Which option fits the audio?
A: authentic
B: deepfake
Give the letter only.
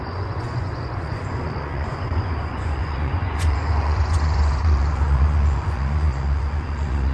B